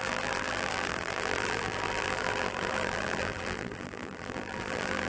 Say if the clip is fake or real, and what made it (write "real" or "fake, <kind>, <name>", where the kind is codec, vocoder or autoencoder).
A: fake, vocoder, BigVGAN v2